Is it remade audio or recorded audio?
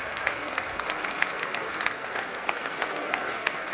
remade